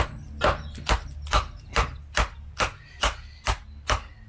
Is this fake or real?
real